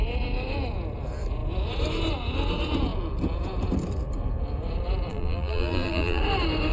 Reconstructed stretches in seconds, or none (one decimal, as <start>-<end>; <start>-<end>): 5.1-6.2